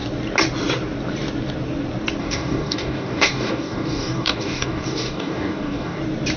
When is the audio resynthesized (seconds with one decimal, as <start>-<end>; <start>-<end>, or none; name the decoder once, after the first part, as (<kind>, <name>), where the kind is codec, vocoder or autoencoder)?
2.2-6.0 (codec, DAC)